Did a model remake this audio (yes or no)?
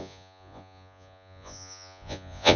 yes